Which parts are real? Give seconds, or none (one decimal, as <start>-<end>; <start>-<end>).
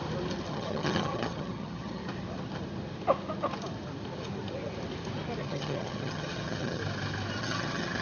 0.0-0.5; 2.0-5.4; 6.8-7.4